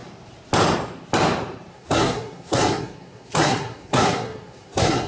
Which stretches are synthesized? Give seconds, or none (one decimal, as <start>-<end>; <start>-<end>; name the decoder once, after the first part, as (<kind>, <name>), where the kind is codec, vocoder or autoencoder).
1.7-5.1 (codec, SNAC)

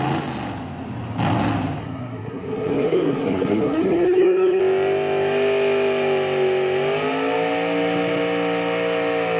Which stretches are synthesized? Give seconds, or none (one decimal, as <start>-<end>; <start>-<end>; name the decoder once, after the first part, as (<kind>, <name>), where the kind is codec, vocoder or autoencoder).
1.8-4.6 (codec, SNAC)

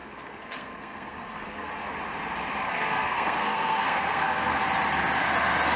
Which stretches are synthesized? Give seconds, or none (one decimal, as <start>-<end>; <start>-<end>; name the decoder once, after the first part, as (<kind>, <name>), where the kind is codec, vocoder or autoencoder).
0.0-1.7 (codec, SNAC); 2.6-4.6

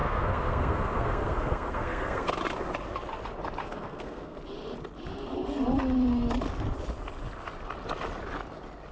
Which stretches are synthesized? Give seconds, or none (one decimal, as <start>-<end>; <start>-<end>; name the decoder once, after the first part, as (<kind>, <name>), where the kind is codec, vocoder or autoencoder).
0.0-2.3 (codec, SNAC); 3.6-4.4

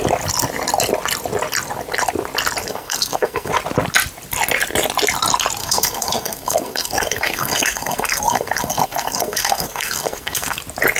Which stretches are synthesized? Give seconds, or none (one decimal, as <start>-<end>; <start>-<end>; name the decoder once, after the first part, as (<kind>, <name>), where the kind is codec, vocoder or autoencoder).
2.6-3.5 (codec, SNAC); 5.6-10.6

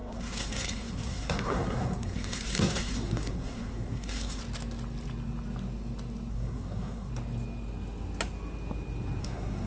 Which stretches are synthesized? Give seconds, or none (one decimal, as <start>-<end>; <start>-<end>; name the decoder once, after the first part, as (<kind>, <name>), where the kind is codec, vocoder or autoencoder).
0.0-4.4 (codec, SNAC); 6.3-7.1; 9.2-9.7

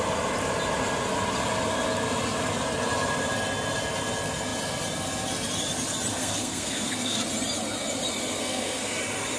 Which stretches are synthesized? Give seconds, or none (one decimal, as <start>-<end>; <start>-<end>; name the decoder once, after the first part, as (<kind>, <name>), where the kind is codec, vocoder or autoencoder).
6.1-7.2 (codec, SNAC); 8.4-9.0